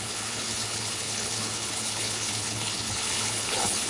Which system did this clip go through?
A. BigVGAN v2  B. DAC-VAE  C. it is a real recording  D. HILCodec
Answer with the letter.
D